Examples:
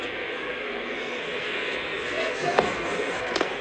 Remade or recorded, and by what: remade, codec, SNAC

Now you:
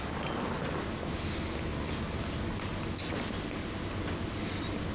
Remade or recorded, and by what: recorded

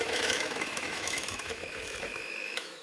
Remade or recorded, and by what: remade, autoencoder, DAC-VAE